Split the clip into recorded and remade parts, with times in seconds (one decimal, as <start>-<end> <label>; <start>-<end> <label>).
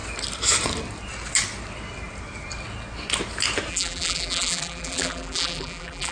0.0-3.7 recorded; 3.7-6.1 remade